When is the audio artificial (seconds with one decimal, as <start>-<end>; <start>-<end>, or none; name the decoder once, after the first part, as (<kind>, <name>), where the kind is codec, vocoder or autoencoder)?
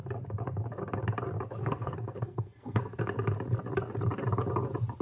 1.6-3.0 (codec, SNAC)